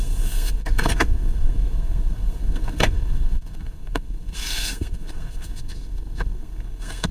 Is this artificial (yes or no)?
yes